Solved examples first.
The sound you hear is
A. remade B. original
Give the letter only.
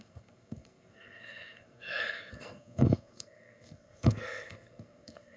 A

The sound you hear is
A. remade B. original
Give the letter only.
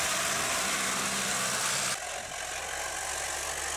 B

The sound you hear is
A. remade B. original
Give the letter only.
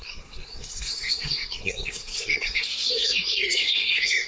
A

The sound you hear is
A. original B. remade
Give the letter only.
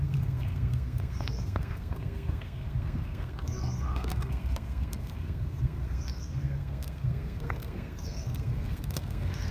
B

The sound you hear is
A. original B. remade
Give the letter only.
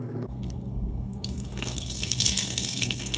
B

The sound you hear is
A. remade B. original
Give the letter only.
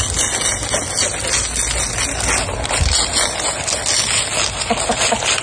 B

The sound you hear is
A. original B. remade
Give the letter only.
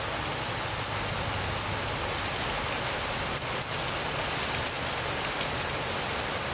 A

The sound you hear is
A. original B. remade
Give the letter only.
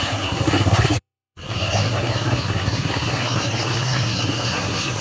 B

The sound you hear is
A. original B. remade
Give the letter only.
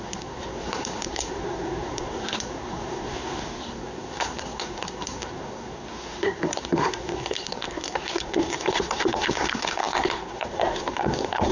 B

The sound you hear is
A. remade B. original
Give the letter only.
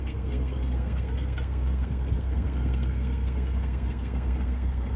A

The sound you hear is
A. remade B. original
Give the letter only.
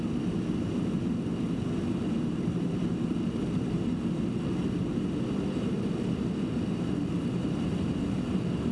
B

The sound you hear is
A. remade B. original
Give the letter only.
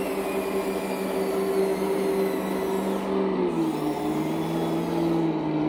B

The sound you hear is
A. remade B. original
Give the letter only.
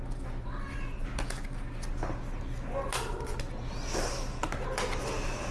B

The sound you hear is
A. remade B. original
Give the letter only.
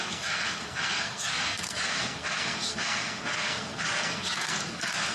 A